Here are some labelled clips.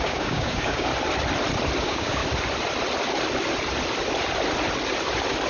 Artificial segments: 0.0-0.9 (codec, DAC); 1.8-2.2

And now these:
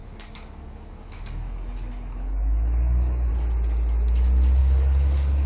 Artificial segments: 0.0-3.3 (codec, DAC); 4.6-5.5

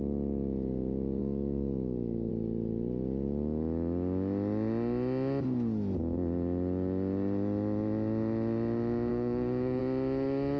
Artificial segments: 1.2-2.3 (codec, DAC); 9.1-9.8

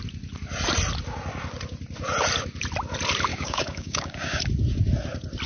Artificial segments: 3.3-4.4 (codec, DAC)

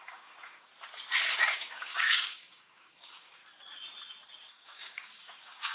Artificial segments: 0.0-0.7 (codec, DAC); 1.3-3.4; 4.5-5.7

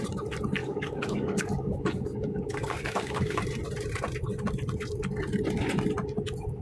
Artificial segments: 0.6-3.4 (codec, DAC)